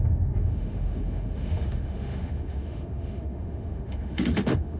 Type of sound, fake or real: fake